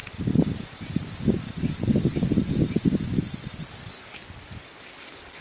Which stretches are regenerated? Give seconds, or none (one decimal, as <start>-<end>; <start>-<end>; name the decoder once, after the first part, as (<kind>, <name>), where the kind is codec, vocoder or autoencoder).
none